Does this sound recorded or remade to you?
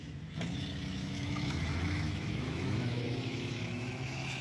remade